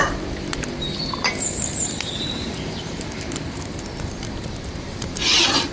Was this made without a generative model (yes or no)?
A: no